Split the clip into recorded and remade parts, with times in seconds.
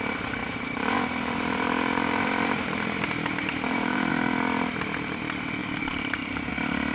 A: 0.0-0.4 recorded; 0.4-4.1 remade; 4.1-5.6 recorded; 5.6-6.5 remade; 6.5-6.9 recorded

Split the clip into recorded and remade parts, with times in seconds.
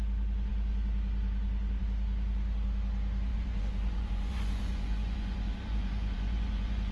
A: 0.0-3.3 recorded; 3.3-6.9 remade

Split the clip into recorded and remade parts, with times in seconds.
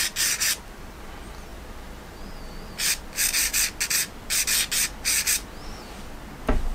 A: 0.0-6.7 recorded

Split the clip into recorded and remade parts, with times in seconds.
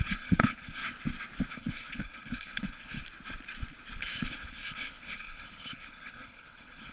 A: 0.0-0.8 remade; 0.8-1.5 recorded; 1.5-3.0 remade; 3.0-4.0 recorded; 4.0-6.9 remade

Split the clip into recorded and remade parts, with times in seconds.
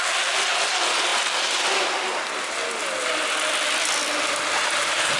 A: 0.0-5.2 recorded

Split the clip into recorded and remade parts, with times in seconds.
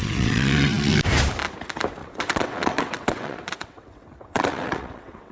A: 0.0-0.9 remade; 0.9-2.0 recorded; 2.0-5.3 remade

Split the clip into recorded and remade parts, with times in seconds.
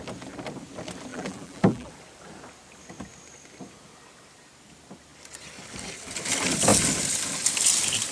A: 0.0-1.1 recorded; 1.1-1.9 remade; 1.9-8.1 recorded